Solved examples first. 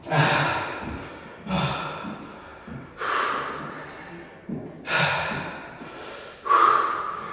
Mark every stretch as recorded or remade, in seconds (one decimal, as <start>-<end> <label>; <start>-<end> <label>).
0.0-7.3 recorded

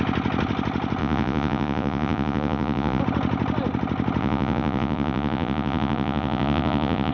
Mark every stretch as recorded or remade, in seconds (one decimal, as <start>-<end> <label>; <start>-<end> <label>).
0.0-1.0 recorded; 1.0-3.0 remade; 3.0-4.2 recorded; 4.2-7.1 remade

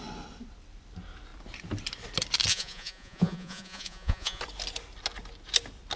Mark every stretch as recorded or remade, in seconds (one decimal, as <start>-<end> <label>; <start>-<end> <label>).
0.0-2.5 recorded; 2.5-4.4 remade; 4.4-6.0 recorded

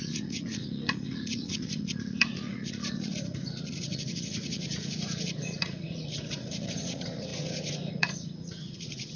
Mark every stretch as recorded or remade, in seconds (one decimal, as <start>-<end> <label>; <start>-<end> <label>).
0.0-9.2 remade

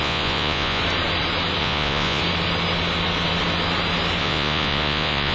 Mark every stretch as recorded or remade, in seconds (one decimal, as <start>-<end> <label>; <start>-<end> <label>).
0.0-0.8 remade; 0.8-1.6 recorded; 1.6-2.2 remade; 2.2-4.2 recorded; 4.2-5.3 remade